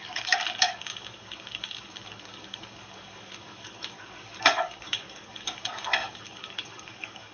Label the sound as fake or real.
fake